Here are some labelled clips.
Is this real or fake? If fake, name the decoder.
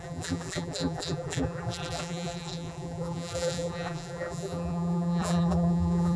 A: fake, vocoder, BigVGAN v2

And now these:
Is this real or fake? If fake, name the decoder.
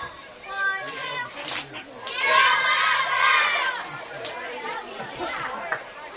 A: fake, vocoder, BigVGAN v2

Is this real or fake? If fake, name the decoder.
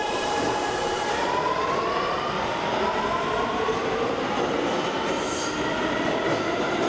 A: fake, vocoder, BigVGAN v2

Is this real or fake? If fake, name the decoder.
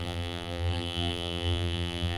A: fake, vocoder, BigVGAN v2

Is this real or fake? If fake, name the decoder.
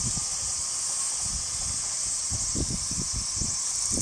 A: real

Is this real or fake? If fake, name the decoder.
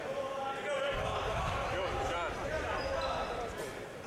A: real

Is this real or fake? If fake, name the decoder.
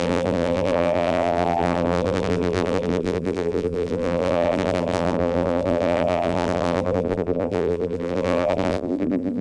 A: fake, vocoder, BigVGAN v2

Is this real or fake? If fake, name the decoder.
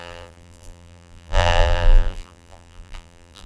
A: fake, vocoder, BigVGAN v2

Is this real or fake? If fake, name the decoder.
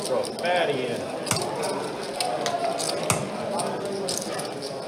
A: real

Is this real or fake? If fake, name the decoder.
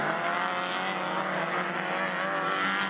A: real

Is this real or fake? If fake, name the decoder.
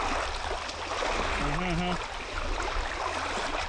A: real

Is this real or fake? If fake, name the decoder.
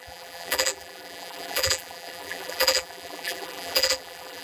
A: fake, vocoder, BigVGAN v2